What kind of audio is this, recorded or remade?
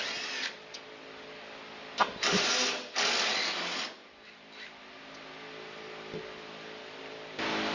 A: recorded